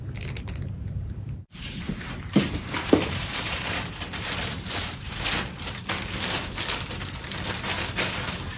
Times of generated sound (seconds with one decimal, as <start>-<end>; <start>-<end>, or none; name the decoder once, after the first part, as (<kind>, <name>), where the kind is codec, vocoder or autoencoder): 0.8-5.4 (vocoder, BigVGAN v2)